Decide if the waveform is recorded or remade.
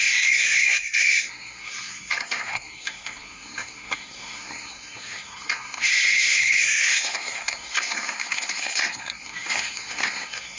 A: remade